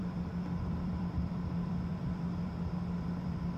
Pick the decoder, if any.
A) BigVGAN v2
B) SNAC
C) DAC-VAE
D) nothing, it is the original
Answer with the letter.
A